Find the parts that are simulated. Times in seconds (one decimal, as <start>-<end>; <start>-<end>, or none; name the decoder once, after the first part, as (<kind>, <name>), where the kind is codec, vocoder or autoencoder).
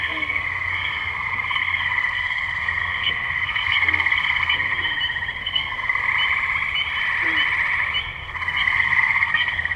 0.0-4.7 (codec, SNAC); 5.4-6.0; 8.0-9.8